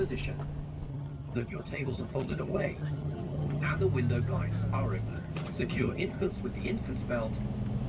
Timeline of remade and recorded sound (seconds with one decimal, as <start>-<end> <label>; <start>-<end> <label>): 0.0-0.9 recorded; 0.9-3.8 remade; 3.8-5.1 recorded; 5.1-6.3 remade; 6.3-7.9 recorded